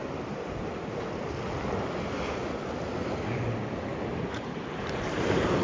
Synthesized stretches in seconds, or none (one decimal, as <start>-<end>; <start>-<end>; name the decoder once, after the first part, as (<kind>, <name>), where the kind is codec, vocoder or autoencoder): 3.9-5.6 (vocoder, BigVGAN v2)